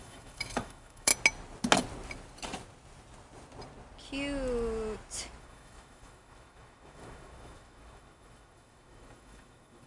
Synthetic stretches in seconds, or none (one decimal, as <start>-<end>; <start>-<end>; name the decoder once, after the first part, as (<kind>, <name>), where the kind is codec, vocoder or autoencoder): 0.0-1.1 (autoencoder, DAC-VAE); 5.4-9.9